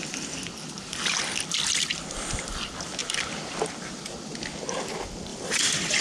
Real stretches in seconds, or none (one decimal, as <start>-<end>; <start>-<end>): 0.0-5.3